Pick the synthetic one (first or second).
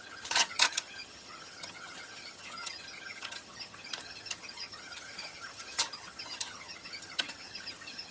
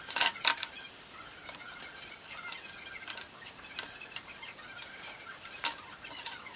first